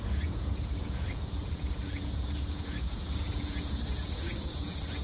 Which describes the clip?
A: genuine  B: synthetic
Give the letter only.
B